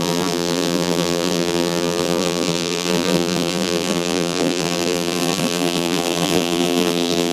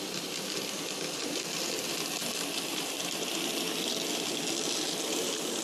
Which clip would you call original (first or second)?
second